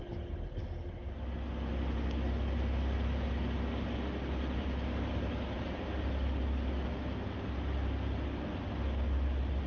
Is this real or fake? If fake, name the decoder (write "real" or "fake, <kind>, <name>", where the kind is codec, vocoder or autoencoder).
real